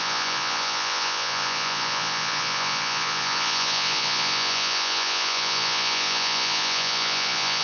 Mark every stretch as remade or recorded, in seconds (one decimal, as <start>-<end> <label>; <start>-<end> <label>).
0.0-7.6 remade